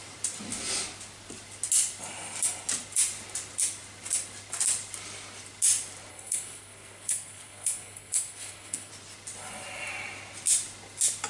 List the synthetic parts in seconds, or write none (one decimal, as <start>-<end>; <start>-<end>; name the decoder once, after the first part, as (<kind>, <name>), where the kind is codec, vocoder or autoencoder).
6.1-8.9 (codec, SNAC)